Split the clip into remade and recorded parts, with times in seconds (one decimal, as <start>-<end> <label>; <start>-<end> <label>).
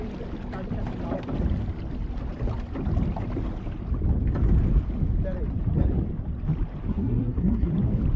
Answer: 0.0-6.9 recorded; 6.9-7.7 remade; 7.7-8.2 recorded